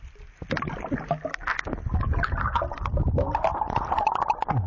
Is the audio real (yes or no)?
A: yes